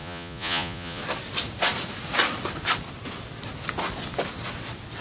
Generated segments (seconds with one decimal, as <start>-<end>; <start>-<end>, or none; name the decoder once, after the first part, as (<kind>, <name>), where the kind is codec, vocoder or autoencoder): 0.0-1.0 (vocoder, Vocos)